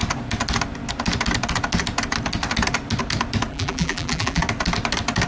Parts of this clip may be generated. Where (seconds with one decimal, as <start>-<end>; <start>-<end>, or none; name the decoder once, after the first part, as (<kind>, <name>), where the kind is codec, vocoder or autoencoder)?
3.5-4.4 (vocoder, BigVGAN v2)